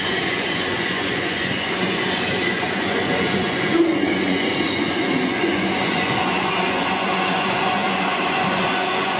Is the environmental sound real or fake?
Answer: fake